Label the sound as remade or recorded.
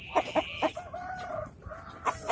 recorded